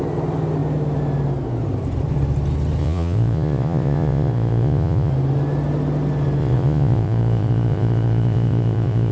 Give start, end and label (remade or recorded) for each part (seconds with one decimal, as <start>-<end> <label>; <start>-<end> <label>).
0.0-2.8 recorded; 2.8-5.1 remade; 5.1-6.4 recorded; 6.4-9.1 remade